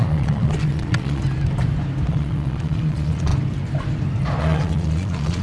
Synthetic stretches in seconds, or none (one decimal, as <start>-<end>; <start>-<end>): 0.0-1.2; 2.1-3.3; 4.4-5.4